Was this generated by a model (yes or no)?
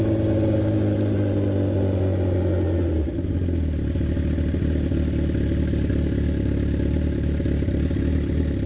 no